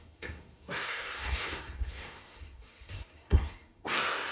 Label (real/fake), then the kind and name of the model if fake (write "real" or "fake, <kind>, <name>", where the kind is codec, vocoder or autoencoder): fake, codec, SNAC